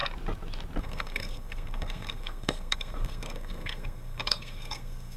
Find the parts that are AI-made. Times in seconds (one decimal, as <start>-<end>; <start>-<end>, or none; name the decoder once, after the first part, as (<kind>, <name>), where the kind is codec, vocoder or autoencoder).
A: 0.8-5.2 (codec, SNAC)